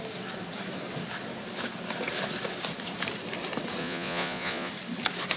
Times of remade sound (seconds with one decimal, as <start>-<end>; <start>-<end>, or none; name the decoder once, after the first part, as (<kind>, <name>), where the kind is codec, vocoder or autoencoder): 3.8-4.7 (vocoder, Vocos)